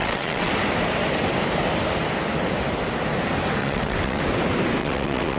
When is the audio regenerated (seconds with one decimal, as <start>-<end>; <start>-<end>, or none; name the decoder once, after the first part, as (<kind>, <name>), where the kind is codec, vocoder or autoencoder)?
0.0-0.5 (vocoder, WaveNeXt); 3.6-4.2; 4.8-5.4